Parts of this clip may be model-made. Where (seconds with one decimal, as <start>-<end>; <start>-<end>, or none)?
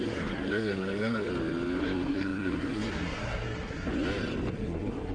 0.0-1.3; 1.8-3.9; 4.5-5.1